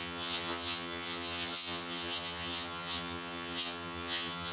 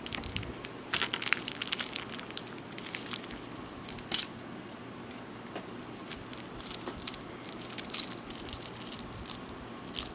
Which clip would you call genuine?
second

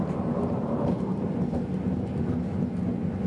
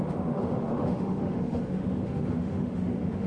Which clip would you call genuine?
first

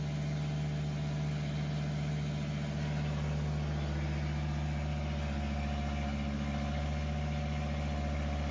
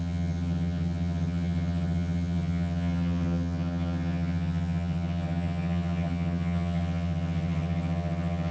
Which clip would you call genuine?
first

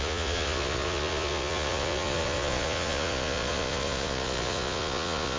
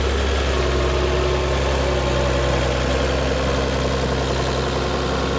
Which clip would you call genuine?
second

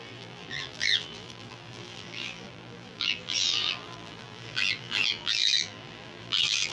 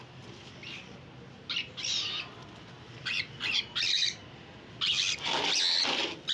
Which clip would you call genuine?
second